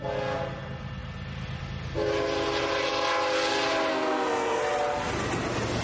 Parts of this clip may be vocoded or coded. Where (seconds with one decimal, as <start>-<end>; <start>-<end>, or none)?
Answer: 3.9-4.6